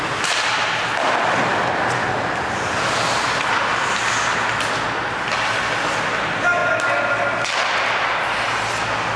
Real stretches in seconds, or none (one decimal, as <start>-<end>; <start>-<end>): 0.0-9.2